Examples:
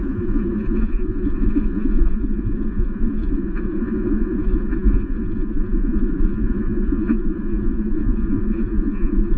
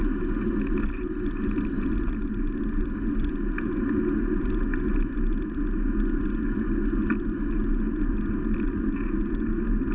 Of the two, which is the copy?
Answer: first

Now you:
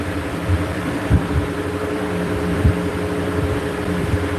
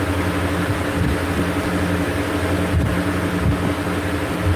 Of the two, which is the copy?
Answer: first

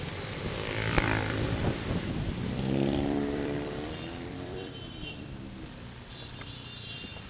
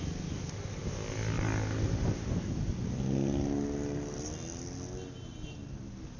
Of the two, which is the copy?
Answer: first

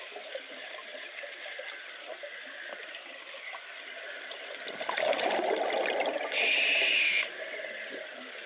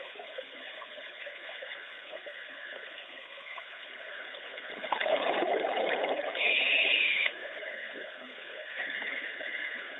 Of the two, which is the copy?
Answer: second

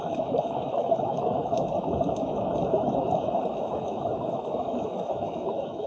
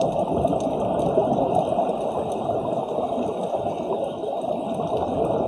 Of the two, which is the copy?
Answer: first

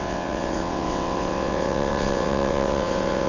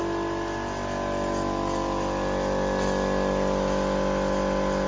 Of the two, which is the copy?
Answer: first